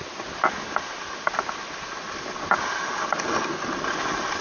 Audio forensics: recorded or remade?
recorded